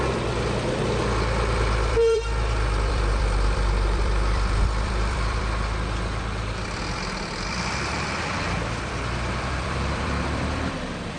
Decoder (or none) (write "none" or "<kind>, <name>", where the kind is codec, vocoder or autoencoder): vocoder, BigVGAN v2